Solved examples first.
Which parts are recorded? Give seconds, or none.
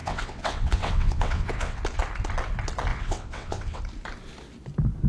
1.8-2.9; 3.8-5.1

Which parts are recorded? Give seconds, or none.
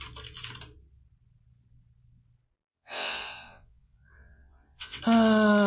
0.0-2.7; 5.0-5.7